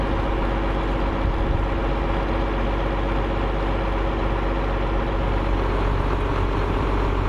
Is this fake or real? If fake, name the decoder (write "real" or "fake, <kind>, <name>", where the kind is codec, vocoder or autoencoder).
real